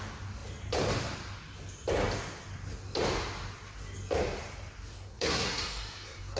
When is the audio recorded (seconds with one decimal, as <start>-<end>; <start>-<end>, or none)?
0.0-4.9